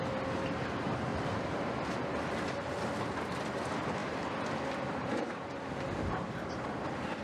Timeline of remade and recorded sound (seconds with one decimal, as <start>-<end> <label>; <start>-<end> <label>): 0.0-1.1 recorded; 1.1-2.0 remade; 2.0-4.0 recorded; 4.0-5.7 remade; 5.7-7.2 recorded